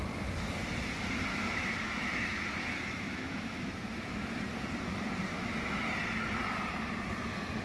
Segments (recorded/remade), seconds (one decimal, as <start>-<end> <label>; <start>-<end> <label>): 0.0-1.3 recorded; 1.3-4.4 remade; 4.4-5.3 recorded; 5.3-5.8 remade; 5.8-7.6 recorded